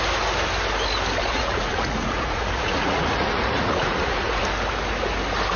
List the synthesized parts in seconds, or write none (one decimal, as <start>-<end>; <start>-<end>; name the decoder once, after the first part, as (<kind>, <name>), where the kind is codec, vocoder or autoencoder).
1.2-4.4 (vocoder, Vocos)